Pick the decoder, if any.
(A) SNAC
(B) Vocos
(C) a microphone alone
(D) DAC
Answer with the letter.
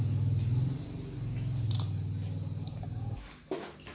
C